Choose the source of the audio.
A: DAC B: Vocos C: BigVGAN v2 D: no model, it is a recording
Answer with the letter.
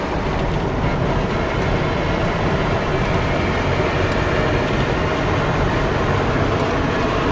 C